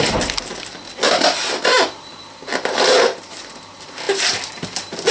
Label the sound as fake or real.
real